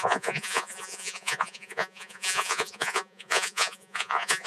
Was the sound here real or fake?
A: fake